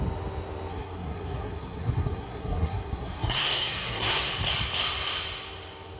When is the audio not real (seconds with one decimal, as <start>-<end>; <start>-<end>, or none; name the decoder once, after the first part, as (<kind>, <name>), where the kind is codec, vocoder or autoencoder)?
0.7-4.3 (codec, SNAC)